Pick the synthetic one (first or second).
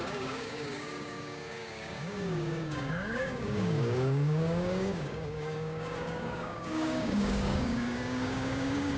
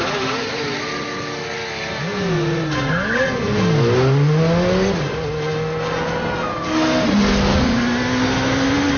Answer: first